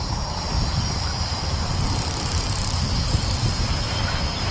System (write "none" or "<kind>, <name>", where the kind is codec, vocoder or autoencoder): vocoder, BigVGAN v2